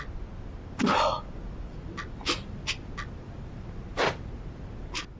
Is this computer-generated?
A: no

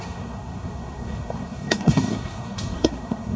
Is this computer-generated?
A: yes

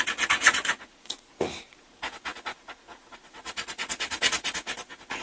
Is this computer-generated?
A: yes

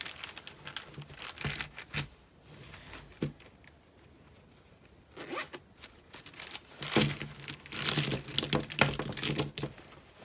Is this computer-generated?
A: no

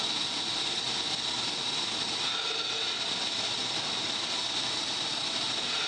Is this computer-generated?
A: no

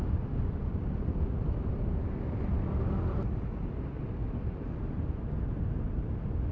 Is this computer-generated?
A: no